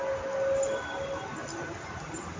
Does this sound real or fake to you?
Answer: real